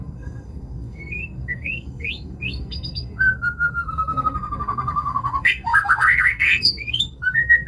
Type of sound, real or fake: fake